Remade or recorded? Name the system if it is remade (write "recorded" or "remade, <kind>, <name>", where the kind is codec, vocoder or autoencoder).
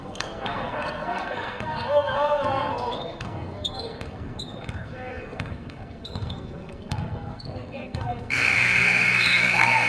remade, codec, SNAC